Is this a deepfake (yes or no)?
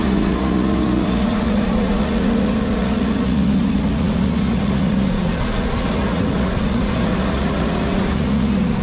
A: yes